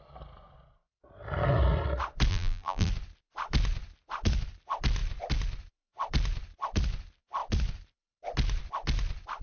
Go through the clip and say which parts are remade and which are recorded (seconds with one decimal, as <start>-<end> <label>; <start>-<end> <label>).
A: 0.0-2.3 recorded; 2.3-2.9 remade; 2.9-9.4 recorded